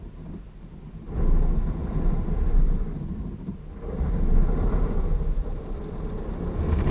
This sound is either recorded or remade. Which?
recorded